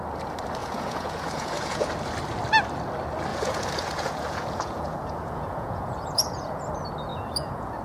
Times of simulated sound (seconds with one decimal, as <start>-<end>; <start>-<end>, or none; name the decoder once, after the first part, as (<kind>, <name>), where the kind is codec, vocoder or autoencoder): 0.6-1.9 (vocoder, Vocos); 3.3-6.6; 7.1-7.8